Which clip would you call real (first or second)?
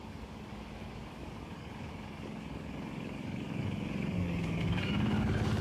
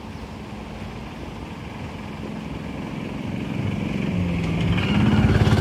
second